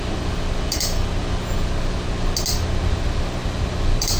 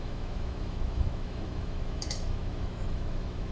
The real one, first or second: first